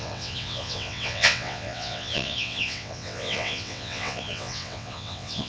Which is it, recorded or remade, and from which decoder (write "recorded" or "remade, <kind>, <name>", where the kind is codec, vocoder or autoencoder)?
remade, vocoder, WaveNeXt